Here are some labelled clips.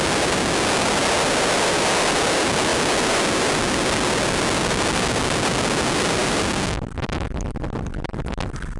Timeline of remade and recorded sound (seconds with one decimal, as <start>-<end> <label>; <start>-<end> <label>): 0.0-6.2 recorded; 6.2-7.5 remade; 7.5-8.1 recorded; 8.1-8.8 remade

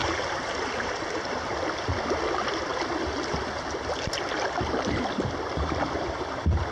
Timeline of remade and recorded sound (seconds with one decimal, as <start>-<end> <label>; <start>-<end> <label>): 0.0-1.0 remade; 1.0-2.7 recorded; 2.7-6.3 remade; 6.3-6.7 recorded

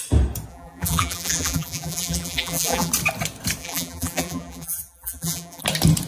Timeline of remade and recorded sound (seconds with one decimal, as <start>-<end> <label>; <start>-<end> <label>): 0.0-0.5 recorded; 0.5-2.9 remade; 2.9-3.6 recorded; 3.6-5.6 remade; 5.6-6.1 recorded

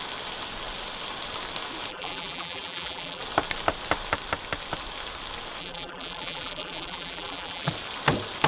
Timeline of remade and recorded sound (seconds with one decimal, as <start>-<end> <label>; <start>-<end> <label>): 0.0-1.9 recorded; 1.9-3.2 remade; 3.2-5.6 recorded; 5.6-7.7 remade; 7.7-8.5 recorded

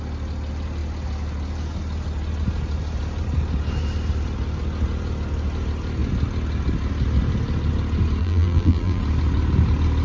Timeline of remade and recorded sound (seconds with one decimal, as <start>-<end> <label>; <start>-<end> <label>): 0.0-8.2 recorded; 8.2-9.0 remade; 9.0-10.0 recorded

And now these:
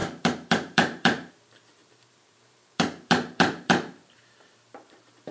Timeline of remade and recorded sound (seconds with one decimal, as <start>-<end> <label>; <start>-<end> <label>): 0.0-1.3 remade; 1.3-1.8 recorded; 1.8-5.3 remade